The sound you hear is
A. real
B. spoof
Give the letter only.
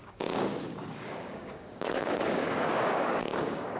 B